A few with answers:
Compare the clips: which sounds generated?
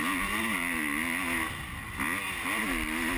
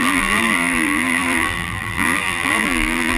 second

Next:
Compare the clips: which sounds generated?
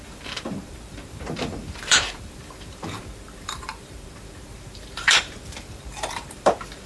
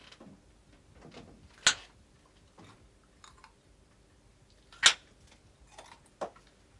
first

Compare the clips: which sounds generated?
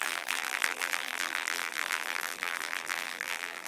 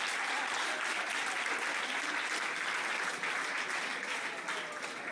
first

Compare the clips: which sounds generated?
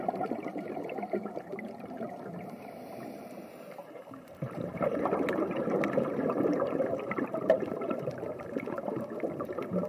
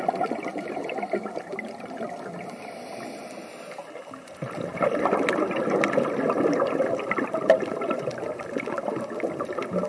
first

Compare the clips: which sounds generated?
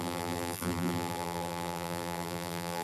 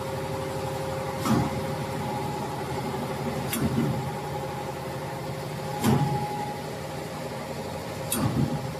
first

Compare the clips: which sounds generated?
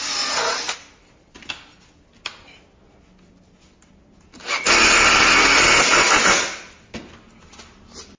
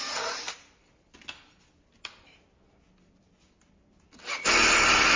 second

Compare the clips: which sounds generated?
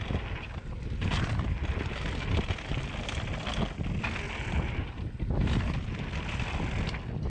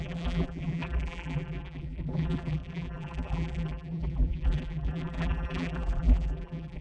second